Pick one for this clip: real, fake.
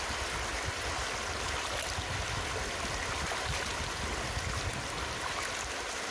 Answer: real